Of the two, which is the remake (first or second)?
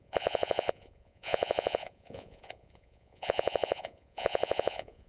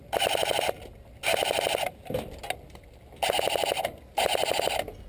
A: first